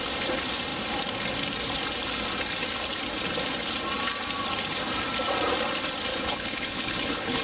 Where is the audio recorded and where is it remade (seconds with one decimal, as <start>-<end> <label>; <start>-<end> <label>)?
0.0-6.1 recorded; 6.1-7.4 remade